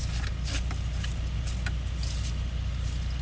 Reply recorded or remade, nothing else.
recorded